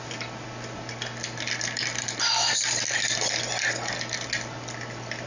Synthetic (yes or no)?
no